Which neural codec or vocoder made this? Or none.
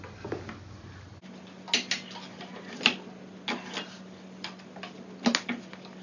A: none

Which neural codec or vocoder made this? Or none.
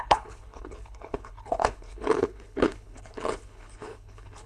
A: codec, HILCodec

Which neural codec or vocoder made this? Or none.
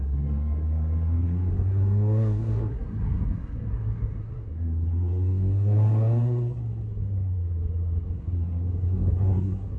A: codec, SNAC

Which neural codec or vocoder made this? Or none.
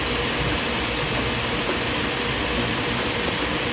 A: none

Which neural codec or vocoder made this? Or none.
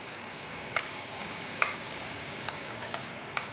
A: codec, DAC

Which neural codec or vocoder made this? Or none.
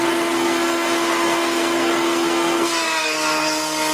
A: codec, SNAC